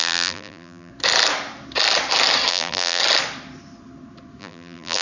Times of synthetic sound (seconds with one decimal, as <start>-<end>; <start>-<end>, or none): 0.0-0.9; 2.5-3.0; 4.4-5.0